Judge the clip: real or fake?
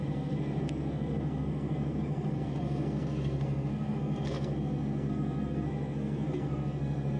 fake